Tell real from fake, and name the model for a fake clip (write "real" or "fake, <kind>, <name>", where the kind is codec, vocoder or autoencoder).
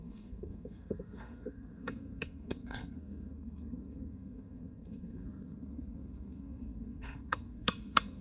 fake, codec, SNAC